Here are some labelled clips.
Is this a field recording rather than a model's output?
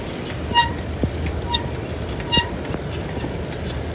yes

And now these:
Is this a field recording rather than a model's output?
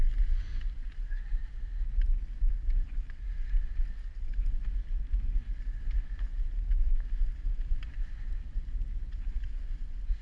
yes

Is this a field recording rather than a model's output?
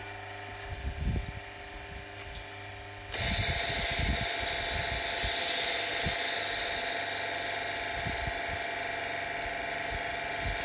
yes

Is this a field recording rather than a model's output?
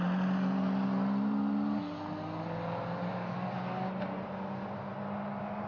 yes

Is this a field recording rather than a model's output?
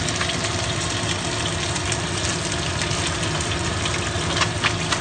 yes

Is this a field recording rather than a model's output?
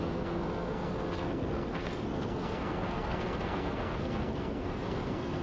no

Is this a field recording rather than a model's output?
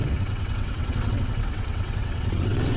no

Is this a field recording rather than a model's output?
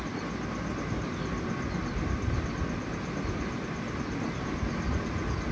yes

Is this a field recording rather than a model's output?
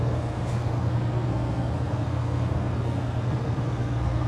no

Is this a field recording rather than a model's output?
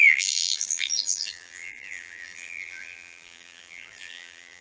no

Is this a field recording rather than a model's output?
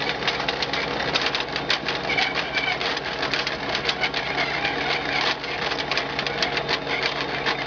yes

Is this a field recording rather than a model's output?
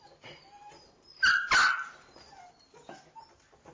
yes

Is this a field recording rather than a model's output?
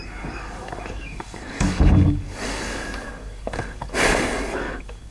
no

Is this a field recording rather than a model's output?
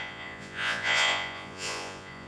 no